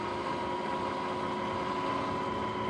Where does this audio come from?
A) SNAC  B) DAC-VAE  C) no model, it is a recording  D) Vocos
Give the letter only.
C